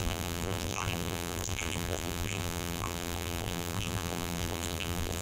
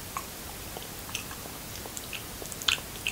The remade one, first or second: first